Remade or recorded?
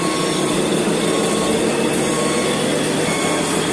recorded